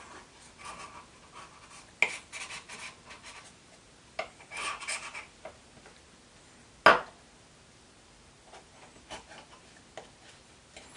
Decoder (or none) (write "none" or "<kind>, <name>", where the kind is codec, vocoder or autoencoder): none